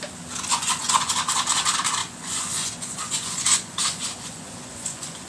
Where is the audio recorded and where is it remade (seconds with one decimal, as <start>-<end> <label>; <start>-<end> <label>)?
0.0-0.5 recorded; 0.5-1.1 remade; 1.1-2.0 recorded; 2.0-5.3 remade